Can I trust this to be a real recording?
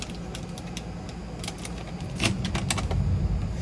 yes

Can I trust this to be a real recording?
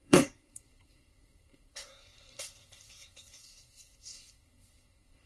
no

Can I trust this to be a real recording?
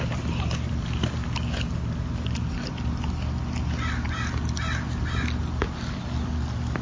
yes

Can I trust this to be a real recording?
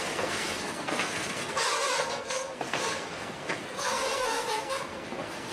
no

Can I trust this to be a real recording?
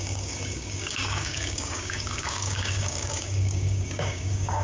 no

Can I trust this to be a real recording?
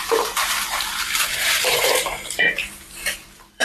no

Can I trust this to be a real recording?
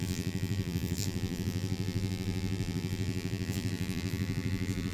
no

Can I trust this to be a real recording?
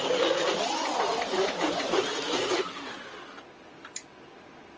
yes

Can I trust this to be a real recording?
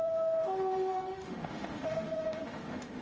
no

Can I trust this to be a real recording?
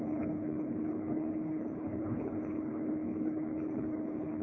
no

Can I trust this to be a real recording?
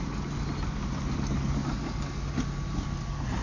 yes